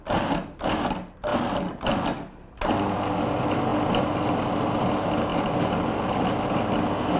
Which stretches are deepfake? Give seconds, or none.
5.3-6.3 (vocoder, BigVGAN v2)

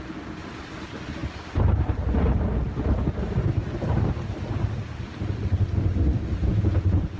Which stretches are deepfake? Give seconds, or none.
6.5-7.2 (vocoder, Vocos)